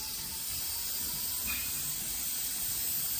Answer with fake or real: real